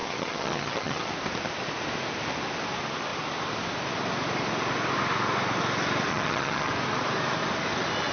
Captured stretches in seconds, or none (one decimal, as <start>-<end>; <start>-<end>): 1.1-6.1; 6.7-8.1

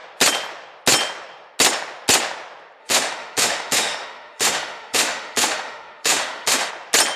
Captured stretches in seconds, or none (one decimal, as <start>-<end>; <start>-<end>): 0.0-2.8; 6.7-7.2

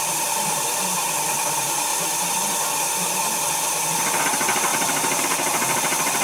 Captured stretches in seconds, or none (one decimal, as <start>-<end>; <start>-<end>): 1.9-4.2